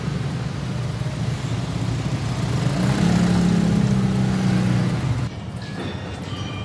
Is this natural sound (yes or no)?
yes